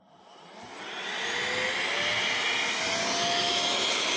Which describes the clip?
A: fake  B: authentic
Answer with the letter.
B